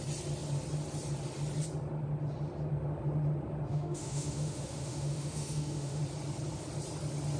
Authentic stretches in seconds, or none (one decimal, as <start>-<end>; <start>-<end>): 0.0-3.7; 6.0-7.4